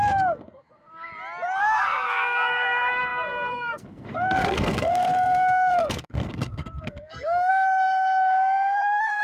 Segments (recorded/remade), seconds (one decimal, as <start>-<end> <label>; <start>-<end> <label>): 0.0-1.1 remade; 1.1-1.6 recorded; 1.6-9.2 remade